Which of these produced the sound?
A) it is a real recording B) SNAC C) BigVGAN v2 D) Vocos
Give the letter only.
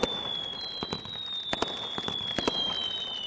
A